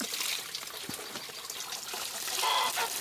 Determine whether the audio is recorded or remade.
recorded